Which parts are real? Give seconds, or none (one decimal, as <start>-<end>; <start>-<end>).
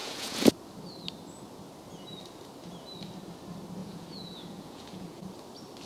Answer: 0.5-3.8; 5.3-5.9